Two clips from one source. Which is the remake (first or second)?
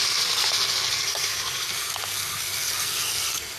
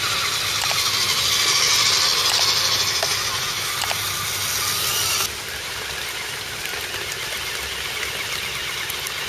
first